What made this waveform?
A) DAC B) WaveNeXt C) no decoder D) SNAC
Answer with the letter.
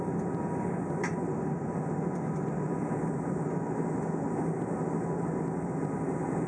C